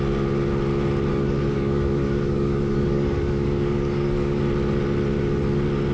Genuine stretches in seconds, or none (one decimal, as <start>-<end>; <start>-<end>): 0.0-1.1; 4.4-5.9